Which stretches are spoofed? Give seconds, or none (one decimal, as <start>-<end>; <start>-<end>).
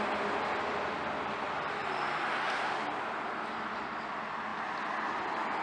none